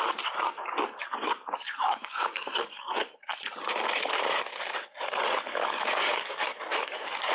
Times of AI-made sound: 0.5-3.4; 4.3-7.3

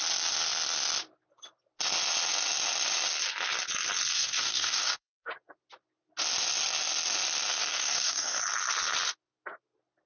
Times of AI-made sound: 4.1-5.3; 7.7-8.4

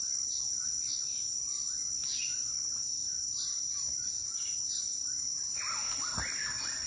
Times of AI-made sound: none